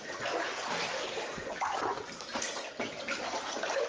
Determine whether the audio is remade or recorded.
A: remade